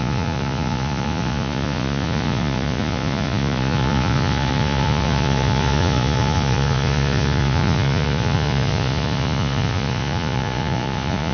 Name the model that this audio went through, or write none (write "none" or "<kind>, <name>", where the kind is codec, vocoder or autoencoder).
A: vocoder, Vocos